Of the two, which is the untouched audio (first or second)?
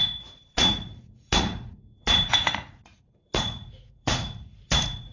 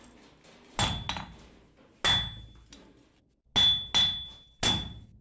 second